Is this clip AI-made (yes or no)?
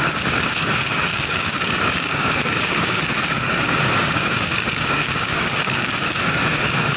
yes